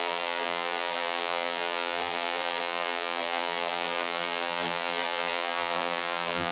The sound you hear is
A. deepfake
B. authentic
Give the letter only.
A